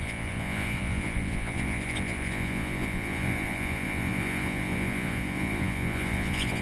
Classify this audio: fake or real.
fake